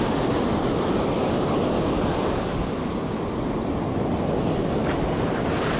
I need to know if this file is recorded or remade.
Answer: recorded